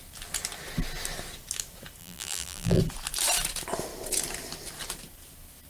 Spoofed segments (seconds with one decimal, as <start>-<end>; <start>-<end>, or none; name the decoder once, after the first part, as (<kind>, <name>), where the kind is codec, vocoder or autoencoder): 2.0-2.8 (vocoder, BigVGAN v2)